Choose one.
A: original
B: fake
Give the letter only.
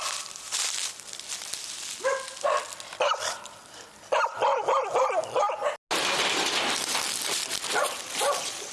A